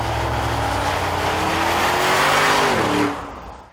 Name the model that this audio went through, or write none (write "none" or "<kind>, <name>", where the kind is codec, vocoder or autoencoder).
none